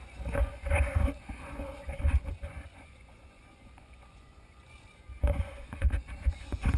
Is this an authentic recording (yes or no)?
no